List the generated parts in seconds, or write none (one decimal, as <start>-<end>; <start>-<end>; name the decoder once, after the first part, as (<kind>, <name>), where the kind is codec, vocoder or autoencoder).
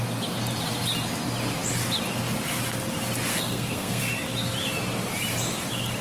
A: 3.3-4.0 (codec, SNAC)